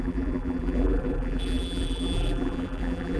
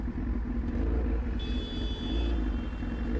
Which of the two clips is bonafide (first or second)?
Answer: second